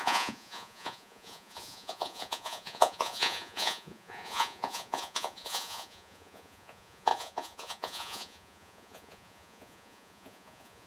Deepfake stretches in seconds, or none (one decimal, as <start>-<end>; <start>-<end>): 0.0-10.9